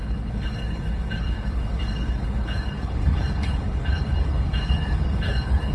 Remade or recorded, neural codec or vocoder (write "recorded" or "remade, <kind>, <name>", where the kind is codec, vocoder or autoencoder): remade, codec, HILCodec